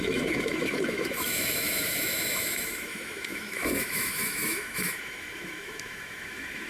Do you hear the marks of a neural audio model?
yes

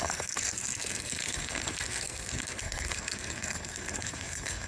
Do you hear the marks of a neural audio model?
yes